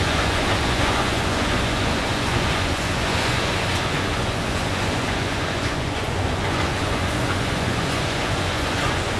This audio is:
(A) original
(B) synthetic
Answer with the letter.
B